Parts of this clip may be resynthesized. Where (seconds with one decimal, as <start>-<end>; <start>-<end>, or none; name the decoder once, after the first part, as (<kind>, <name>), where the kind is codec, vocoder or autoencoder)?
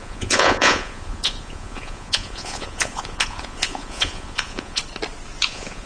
0.0-4.8 (vocoder, Vocos); 5.4-5.9